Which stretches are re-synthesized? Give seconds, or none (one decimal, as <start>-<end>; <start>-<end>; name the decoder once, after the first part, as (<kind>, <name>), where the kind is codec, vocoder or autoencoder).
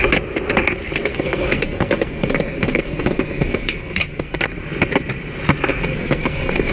1.1-4.4 (codec, SNAC); 5.7-6.7